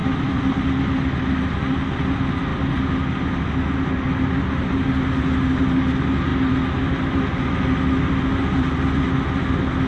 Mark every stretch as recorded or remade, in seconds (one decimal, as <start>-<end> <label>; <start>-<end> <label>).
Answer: 0.0-0.6 remade; 0.6-9.9 recorded